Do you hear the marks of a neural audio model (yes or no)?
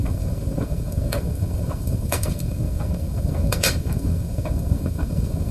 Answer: yes